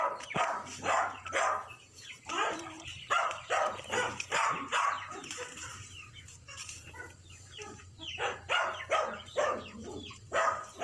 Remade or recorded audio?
remade